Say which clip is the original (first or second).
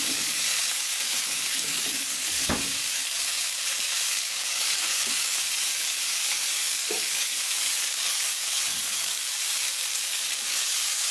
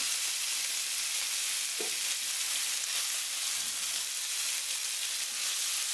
second